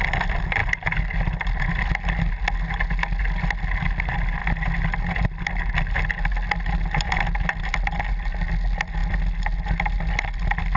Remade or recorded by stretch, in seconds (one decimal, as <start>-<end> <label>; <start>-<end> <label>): 0.0-10.8 recorded